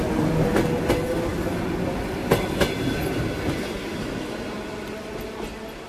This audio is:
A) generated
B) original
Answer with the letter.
B